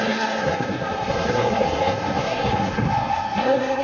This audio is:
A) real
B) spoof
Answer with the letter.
B